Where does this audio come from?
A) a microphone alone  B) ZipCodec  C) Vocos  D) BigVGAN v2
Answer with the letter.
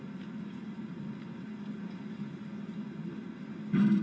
A